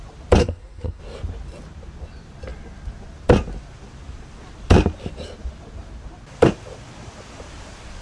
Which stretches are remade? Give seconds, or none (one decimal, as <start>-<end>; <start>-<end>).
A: 0.4-1.0